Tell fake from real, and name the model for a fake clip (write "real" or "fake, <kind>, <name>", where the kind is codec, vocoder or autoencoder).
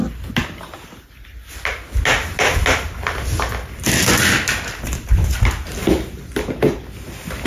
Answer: real